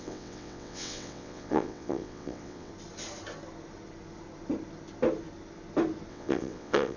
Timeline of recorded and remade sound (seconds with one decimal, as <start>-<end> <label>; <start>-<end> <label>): 0.0-2.7 remade; 2.7-6.1 recorded; 6.1-7.0 remade